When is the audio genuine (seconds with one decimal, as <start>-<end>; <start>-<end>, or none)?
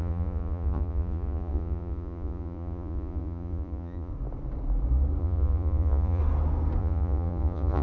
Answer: 4.1-5.2; 6.2-6.8